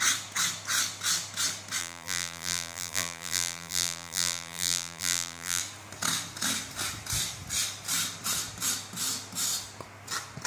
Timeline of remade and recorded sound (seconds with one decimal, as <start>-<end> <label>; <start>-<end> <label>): 0.0-1.8 recorded; 1.8-5.6 remade; 5.6-10.5 recorded